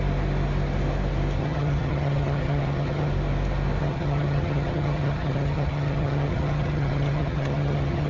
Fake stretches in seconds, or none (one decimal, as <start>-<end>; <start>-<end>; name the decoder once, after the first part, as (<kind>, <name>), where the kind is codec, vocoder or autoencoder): 1.4-3.1 (vocoder, HiFi-GAN); 3.8-8.1